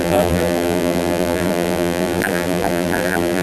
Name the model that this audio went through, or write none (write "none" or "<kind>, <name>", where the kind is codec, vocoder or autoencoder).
vocoder, BigVGAN v2